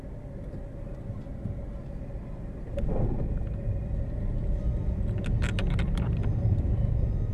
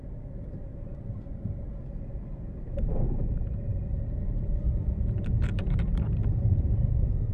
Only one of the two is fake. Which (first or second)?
second